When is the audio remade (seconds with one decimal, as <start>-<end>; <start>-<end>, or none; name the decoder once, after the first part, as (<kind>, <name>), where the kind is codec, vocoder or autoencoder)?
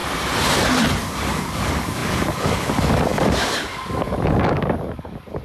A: 1.1-5.4 (codec, DAC)